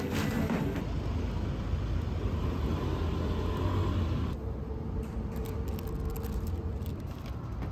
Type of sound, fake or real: real